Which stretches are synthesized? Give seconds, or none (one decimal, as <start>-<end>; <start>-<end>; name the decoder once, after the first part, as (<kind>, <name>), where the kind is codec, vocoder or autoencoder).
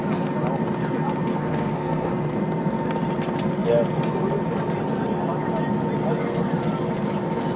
1.3-2.1 (codec, SNAC)